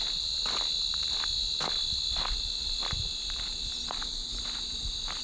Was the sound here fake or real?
real